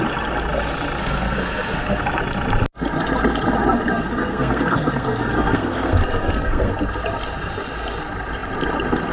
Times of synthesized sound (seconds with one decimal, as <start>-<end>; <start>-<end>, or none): 1.0-2.0; 3.9-6.7